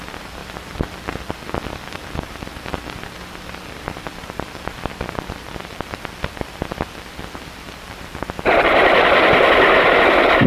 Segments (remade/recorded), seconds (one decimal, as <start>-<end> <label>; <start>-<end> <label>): 0.0-10.5 remade